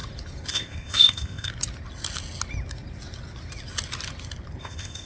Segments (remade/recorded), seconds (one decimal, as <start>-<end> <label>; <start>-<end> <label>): 0.0-0.5 recorded; 0.5-1.5 remade; 1.5-4.6 recorded; 4.6-5.1 remade